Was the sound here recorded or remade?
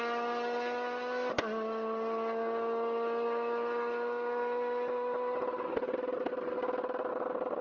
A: recorded